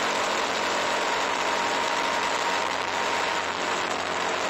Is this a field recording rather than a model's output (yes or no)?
yes